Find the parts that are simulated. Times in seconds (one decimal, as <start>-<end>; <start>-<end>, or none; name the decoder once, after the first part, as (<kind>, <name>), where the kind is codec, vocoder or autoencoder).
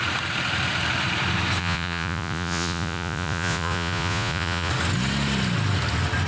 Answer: 1.6-4.7 (vocoder, Vocos)